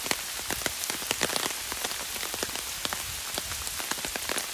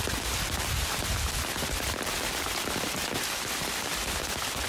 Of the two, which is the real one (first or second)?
first